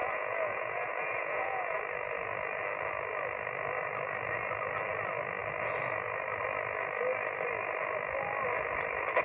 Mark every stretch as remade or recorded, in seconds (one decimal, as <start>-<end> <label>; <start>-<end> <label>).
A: 0.0-1.8 remade; 1.8-9.2 recorded